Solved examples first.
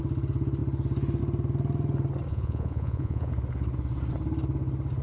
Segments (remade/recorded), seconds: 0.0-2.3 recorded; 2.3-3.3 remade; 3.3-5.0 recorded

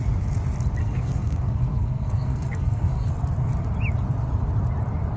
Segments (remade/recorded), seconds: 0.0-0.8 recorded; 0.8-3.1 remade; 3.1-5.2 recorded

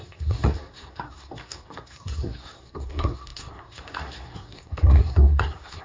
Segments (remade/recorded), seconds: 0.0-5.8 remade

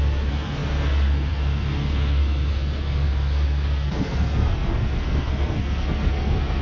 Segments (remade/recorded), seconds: 0.0-6.6 remade

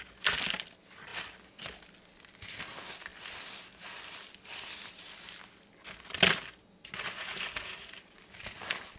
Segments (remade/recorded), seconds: 0.0-7.2 recorded; 7.2-8.1 remade; 8.1-9.0 recorded

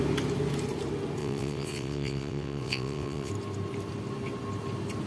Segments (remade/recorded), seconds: 0.0-1.2 recorded; 1.2-3.3 remade; 3.3-5.1 recorded

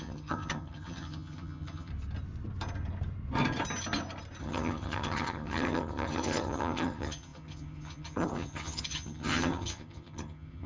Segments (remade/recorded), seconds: 0.0-1.9 remade; 1.9-4.4 recorded; 4.4-10.7 remade

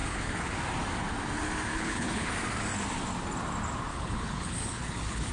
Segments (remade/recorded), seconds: 0.0-0.5 remade; 0.5-1.7 recorded; 1.7-2.3 remade; 2.3-3.9 recorded; 3.9-5.3 remade